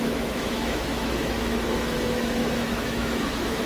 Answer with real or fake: fake